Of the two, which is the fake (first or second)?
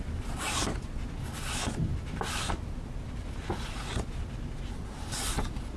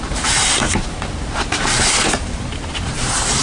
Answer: second